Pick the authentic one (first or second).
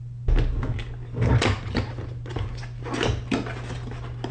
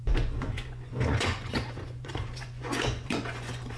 first